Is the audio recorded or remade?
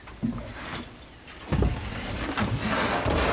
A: recorded